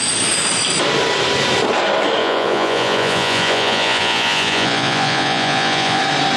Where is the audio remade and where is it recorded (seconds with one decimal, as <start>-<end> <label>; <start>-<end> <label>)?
0.0-2.2 recorded; 2.2-6.0 remade; 6.0-6.4 recorded